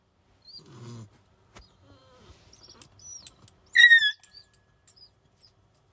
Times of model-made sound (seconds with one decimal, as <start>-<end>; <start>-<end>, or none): none